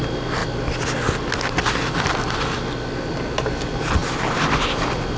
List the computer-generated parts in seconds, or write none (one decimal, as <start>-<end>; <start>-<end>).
none